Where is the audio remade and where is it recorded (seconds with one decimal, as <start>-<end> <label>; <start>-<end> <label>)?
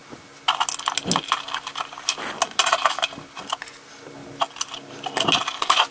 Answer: 0.0-5.9 recorded